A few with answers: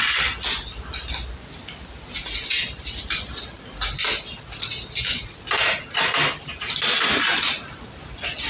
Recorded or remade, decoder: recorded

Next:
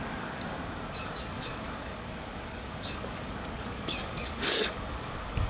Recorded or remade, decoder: remade, codec, DAC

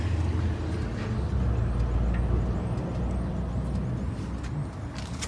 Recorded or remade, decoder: recorded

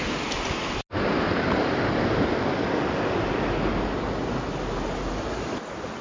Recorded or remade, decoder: recorded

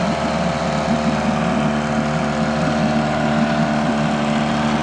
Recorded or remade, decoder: recorded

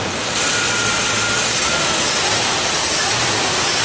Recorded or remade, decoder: recorded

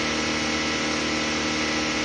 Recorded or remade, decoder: recorded